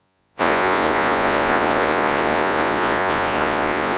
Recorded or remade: remade